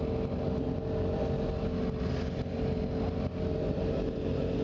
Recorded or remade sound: recorded